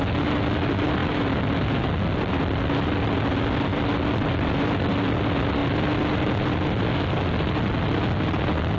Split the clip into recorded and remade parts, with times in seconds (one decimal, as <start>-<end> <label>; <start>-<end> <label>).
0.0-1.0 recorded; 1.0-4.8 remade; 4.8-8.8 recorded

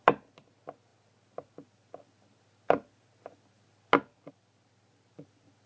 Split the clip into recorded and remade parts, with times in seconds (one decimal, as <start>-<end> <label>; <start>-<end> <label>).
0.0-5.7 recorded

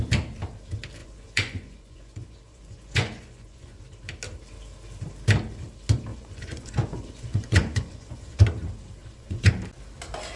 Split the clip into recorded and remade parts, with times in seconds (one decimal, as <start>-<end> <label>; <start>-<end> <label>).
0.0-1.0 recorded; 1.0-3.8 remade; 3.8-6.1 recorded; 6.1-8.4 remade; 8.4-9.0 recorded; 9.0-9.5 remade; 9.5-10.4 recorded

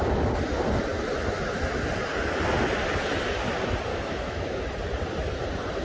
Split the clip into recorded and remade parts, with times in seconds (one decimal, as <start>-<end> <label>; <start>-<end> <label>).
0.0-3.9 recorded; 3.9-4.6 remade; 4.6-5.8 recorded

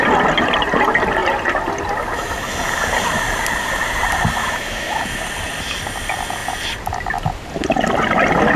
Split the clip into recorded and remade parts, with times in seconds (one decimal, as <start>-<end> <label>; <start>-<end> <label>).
0.0-4.4 recorded; 4.4-5.2 remade; 5.2-8.6 recorded

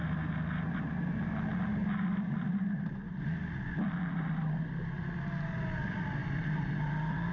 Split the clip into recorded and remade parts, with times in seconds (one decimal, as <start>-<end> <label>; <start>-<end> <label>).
0.0-6.2 recorded; 6.2-7.3 remade

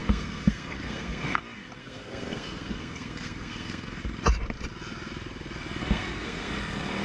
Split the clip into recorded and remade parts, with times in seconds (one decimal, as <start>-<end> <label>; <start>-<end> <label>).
0.0-1.4 remade; 1.4-1.8 recorded; 1.8-4.0 remade; 4.0-5.8 recorded; 5.8-6.5 remade; 6.5-7.0 recorded

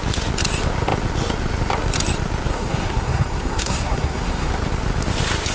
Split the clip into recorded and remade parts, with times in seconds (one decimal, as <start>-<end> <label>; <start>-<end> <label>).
0.0-2.5 recorded; 2.5-4.5 remade; 4.5-5.5 recorded